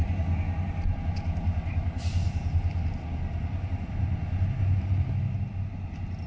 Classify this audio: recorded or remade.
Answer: recorded